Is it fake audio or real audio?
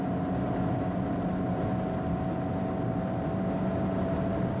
real